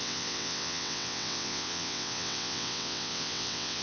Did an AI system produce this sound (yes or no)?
yes